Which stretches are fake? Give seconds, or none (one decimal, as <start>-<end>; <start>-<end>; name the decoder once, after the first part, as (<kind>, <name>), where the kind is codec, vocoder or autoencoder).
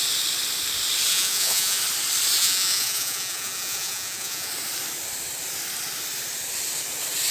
1.1-1.8 (vocoder, Vocos); 2.4-4.5